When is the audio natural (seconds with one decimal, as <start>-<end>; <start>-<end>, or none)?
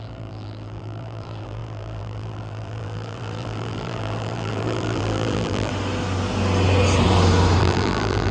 5.7-7.6